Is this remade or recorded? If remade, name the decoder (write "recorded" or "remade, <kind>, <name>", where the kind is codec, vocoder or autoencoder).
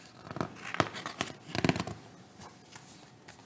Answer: recorded